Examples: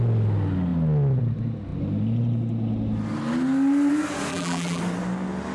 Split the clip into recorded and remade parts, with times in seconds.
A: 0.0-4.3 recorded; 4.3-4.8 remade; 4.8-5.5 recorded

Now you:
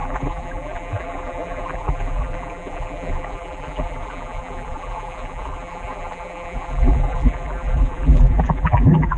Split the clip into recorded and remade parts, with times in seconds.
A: 0.0-9.2 remade

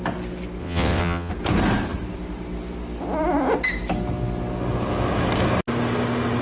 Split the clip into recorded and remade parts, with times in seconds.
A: 0.0-0.6 recorded; 0.6-1.3 remade; 1.3-6.4 recorded